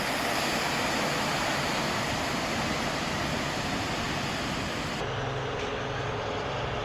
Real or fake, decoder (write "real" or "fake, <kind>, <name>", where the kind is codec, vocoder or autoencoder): real